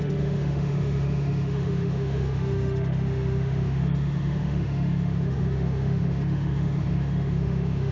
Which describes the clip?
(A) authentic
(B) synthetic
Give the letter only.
B